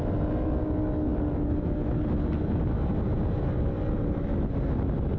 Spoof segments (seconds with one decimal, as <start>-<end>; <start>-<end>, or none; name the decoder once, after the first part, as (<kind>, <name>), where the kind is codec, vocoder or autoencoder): none